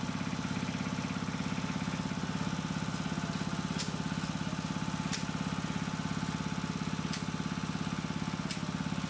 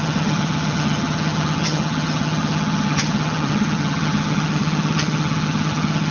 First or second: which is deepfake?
second